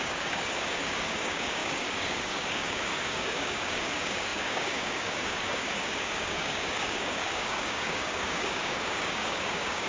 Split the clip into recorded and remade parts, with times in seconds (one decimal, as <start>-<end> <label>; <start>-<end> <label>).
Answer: 0.0-9.9 remade